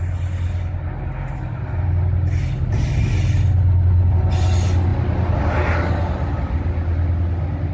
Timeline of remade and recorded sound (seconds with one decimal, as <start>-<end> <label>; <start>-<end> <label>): 0.0-7.7 recorded